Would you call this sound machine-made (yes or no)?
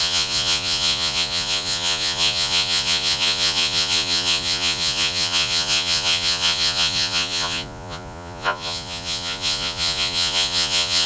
yes